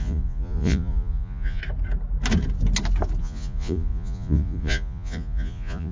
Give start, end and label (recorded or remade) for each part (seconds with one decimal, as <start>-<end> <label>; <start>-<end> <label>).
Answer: 0.0-1.6 remade; 1.6-3.2 recorded; 3.2-5.9 remade